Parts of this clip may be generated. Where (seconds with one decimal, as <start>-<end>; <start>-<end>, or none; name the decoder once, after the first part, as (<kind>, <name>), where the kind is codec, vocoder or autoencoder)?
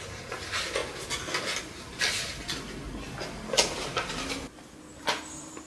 none